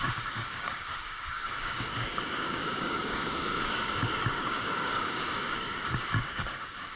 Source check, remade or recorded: remade